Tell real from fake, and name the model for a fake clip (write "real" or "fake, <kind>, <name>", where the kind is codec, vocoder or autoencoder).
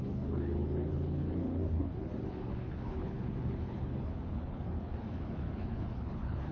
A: fake, codec, HILCodec